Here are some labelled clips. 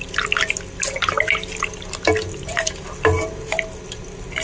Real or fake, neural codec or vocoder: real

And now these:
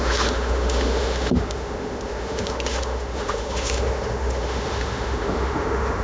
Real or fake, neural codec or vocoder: fake, autoencoder, DAC-VAE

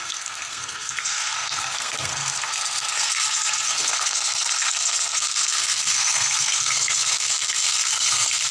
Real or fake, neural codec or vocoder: fake, codec, SNAC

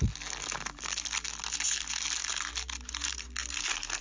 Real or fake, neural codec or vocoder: real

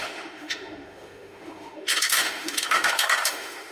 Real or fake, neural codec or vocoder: fake, autoencoder, DAC-VAE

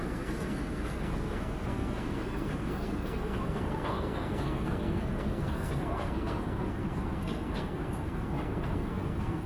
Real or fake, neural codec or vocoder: fake, codec, SNAC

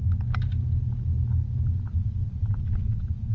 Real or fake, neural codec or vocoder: real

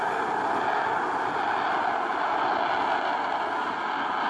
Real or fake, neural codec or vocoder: real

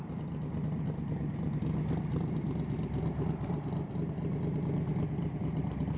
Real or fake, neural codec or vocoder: real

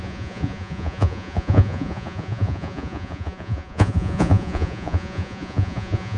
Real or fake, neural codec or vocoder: fake, vocoder, Vocos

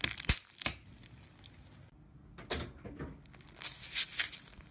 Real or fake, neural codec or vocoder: real